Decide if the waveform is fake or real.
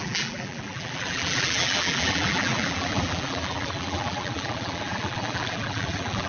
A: fake